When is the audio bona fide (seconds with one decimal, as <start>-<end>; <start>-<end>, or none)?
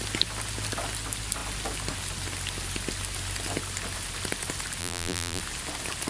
0.0-4.8; 5.4-6.1